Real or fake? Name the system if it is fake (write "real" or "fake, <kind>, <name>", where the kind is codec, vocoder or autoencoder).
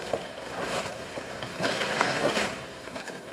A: fake, codec, SNAC